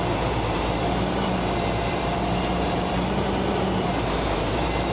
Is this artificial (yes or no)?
yes